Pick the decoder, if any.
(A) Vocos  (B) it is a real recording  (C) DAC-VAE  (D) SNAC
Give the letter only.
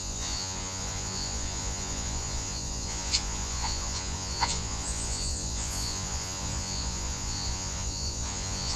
A